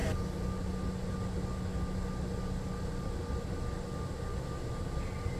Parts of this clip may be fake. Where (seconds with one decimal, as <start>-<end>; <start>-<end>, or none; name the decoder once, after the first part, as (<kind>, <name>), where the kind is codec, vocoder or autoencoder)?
none

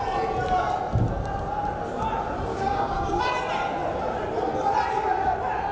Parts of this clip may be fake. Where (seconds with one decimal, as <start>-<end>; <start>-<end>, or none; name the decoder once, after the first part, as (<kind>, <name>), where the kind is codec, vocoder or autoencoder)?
2.5-3.2 (codec, DAC)